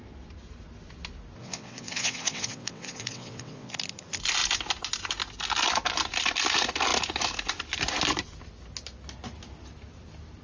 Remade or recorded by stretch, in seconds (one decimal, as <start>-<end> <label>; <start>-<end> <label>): 0.0-1.4 recorded; 1.4-3.7 remade; 3.7-10.4 recorded